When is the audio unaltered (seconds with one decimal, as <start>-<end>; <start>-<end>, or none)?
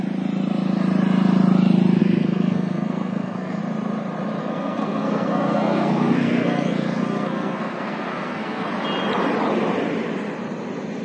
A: 0.0-2.0; 3.6-4.4; 8.7-11.0